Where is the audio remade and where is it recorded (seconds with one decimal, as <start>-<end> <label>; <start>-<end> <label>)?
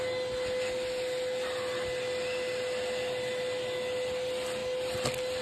0.0-5.4 recorded